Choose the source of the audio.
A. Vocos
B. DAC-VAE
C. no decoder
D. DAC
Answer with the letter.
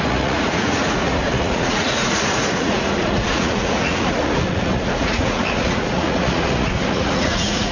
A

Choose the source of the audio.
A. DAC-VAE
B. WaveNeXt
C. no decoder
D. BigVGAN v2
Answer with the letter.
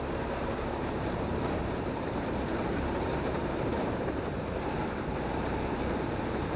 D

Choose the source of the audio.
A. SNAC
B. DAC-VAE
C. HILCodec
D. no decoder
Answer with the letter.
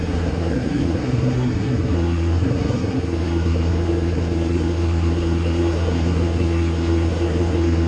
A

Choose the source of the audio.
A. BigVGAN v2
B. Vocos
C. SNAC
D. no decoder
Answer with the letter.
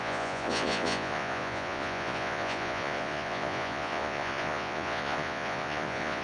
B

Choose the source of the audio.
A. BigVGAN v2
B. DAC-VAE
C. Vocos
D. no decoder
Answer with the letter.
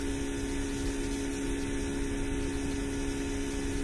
D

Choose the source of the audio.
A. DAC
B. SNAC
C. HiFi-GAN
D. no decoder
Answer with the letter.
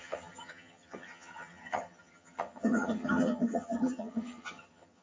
C